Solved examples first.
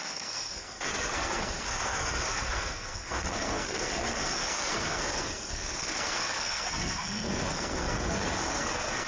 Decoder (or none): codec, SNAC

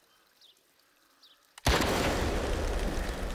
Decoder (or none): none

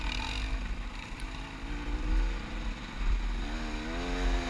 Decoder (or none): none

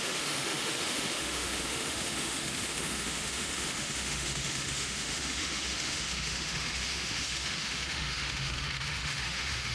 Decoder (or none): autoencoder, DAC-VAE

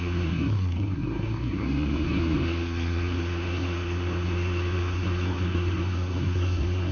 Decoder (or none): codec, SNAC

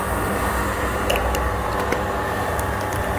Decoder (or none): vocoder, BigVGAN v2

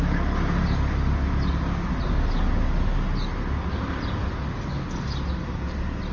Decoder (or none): none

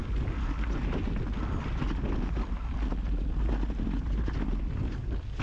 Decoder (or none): none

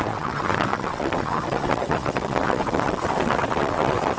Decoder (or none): vocoder, WaveNeXt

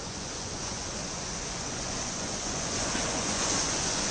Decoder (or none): vocoder, Vocos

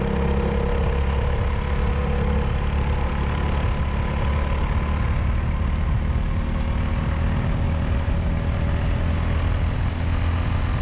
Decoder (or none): none